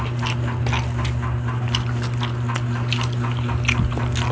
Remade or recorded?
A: recorded